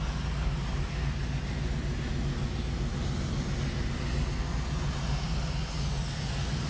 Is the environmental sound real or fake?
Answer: real